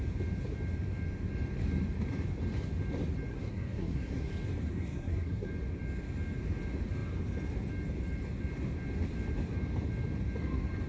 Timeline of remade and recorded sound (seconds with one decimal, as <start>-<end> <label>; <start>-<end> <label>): 0.0-3.3 recorded; 3.3-4.3 remade; 4.3-4.7 recorded; 4.7-5.5 remade; 5.5-10.9 recorded